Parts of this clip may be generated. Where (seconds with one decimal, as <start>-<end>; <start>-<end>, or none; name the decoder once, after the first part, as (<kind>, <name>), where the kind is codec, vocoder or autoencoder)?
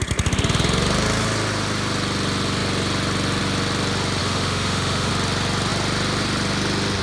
4.2-5.1 (autoencoder, DAC-VAE)